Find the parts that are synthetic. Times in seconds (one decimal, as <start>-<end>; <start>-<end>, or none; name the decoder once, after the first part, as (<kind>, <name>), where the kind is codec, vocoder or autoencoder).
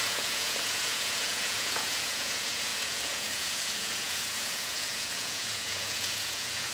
0.0-6.7 (vocoder, Vocos)